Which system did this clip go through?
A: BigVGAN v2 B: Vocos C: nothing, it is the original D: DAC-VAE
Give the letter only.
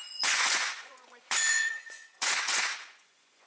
B